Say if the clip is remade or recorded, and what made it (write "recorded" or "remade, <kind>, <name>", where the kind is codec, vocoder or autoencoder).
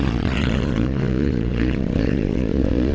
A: remade, vocoder, Vocos